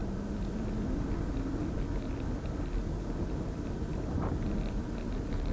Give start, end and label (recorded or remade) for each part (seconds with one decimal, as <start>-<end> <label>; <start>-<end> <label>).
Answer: 0.0-5.5 recorded